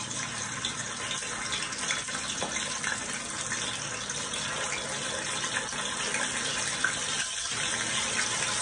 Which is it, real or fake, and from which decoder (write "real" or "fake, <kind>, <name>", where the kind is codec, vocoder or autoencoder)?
real